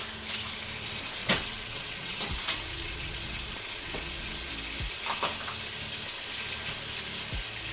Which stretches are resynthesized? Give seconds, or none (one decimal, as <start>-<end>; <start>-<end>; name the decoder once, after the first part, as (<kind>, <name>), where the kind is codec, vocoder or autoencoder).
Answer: 1.2-4.5 (vocoder, WaveNeXt)